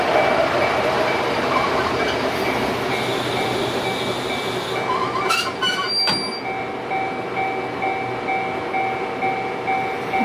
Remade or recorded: recorded